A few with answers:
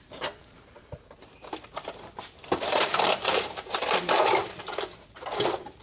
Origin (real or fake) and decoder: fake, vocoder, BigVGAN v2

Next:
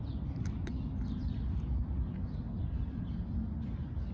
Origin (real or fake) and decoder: real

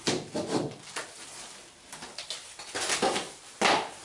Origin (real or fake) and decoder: real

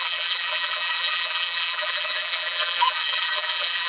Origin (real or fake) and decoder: fake, vocoder, BigVGAN v2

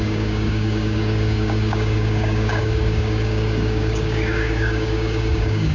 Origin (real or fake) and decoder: fake, codec, DAC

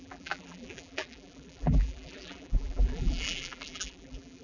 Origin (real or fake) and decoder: fake, vocoder, BigVGAN v2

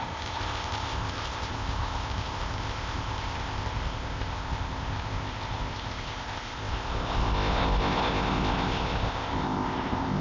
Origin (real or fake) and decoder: fake, codec, ZipCodec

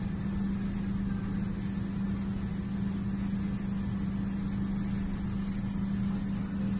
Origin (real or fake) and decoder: real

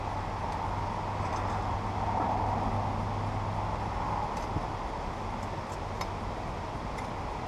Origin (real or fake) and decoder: real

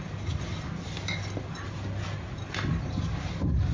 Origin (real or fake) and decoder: real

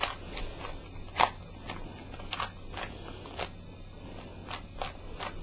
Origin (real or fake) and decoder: real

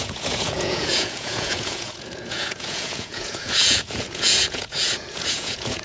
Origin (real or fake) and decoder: fake, vocoder, Vocos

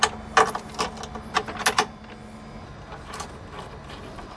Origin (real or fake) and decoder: real